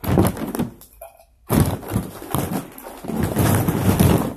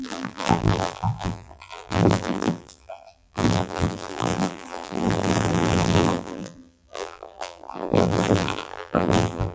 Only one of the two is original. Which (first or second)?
first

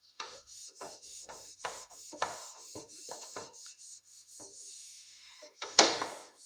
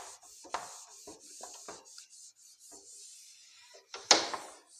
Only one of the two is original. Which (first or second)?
second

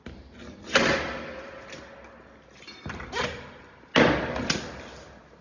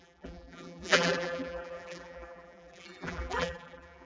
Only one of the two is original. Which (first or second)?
first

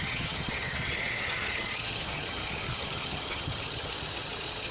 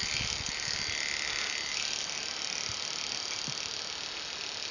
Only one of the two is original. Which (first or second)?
second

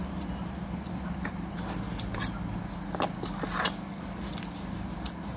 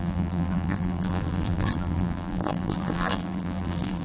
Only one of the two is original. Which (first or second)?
first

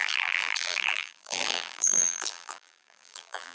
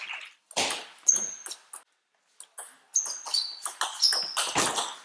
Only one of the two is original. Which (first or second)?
second